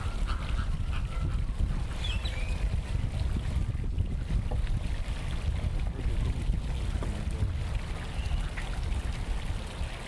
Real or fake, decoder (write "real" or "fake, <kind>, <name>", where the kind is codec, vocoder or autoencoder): real